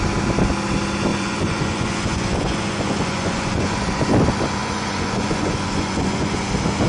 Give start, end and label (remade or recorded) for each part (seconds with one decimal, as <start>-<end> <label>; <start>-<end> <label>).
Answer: 0.0-1.1 recorded; 1.1-4.0 remade; 4.0-4.6 recorded; 4.6-6.5 remade; 6.5-6.9 recorded